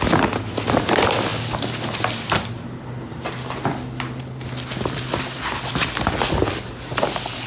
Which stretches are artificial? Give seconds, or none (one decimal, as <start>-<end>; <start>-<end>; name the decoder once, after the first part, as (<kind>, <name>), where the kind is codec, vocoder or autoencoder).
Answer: none